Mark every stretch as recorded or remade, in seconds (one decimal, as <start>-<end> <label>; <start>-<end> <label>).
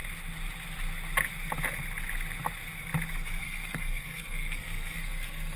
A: 0.0-3.4 recorded; 3.4-5.6 remade